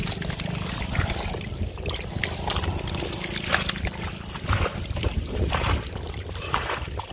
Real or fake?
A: real